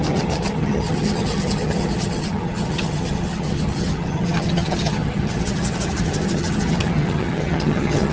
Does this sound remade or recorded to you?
remade